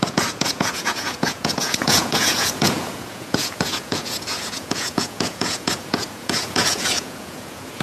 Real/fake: fake